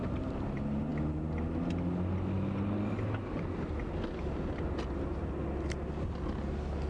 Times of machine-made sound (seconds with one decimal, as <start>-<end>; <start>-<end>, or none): none